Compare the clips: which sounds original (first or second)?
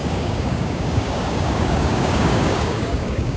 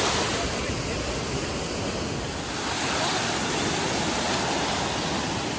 second